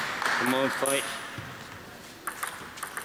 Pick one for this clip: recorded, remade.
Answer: recorded